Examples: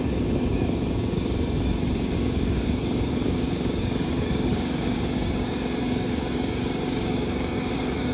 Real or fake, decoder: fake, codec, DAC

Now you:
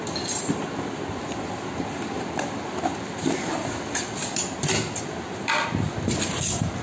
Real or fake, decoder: real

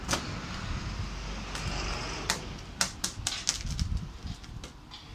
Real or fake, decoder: real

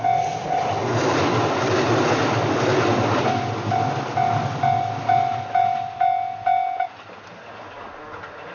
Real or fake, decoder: real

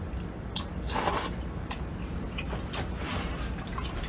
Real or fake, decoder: real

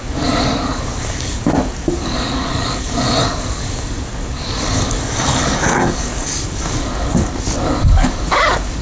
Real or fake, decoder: fake, codec, DAC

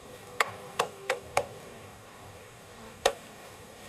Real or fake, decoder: fake, codec, DAC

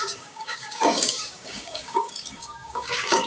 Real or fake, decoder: fake, codec, DAC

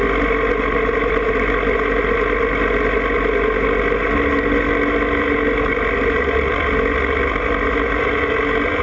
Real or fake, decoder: real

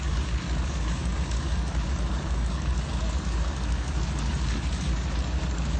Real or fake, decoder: fake, codec, DAC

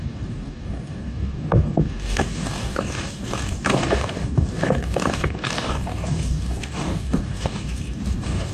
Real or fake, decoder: fake, codec, DAC